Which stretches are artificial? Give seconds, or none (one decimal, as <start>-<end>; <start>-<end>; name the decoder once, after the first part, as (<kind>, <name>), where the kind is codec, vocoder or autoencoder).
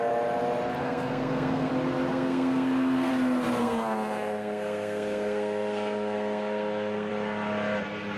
0.8-1.7 (codec, SNAC); 2.1-3.1; 3.6-7.1